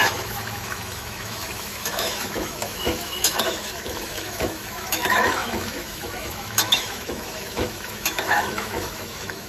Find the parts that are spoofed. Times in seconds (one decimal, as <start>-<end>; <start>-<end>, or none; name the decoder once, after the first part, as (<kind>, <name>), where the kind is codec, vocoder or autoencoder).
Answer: 0.0-9.5 (autoencoder, DAC-VAE)